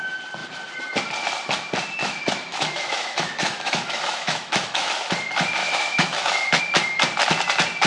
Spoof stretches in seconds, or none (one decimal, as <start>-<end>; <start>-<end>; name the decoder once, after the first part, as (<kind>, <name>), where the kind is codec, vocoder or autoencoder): 2.0-4.9 (autoencoder, DAC-VAE); 5.6-6.6